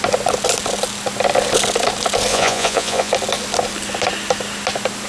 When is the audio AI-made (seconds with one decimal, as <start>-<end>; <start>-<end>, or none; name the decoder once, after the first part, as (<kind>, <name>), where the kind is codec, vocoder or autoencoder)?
2.3-3.1 (vocoder, Vocos)